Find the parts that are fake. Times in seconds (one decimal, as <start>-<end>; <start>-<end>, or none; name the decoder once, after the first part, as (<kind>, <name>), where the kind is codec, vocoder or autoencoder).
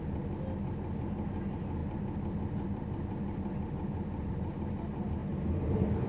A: 5.2-6.1 (vocoder, BigVGAN v2)